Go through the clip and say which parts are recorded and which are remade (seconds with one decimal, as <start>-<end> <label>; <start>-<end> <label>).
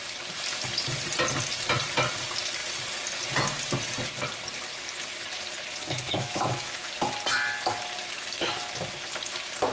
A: 0.0-5.7 recorded; 5.7-6.9 remade; 6.9-8.0 recorded; 8.0-8.5 remade; 8.5-9.7 recorded